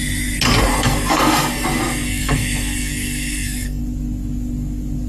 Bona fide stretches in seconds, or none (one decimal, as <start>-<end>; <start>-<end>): 0.0-0.7; 3.8-5.1

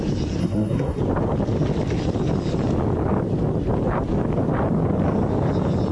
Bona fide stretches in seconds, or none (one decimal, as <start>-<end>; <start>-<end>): 0.0-0.4; 1.0-5.9

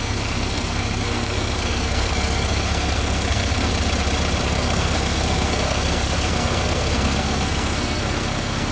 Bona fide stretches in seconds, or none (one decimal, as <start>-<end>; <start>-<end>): 3.7-4.4

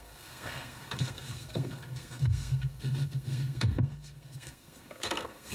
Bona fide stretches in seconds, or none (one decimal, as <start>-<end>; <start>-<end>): none

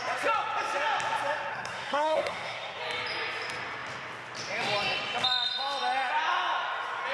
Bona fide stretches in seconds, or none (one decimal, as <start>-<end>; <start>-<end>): 0.0-1.5; 2.8-7.1

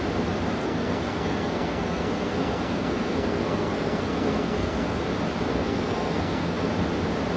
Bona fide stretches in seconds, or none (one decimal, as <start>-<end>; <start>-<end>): 0.0-0.6; 5.0-5.5; 6.7-7.4